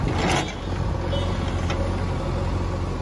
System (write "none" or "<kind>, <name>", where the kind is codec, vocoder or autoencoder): none